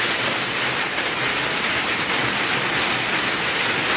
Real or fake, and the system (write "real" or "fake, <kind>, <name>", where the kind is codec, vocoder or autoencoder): real